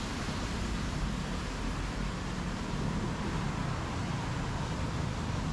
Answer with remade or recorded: recorded